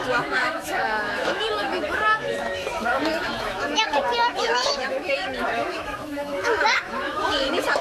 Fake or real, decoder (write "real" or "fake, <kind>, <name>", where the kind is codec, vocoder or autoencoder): fake, autoencoder, DAC-VAE